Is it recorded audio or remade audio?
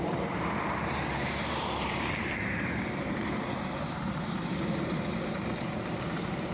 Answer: remade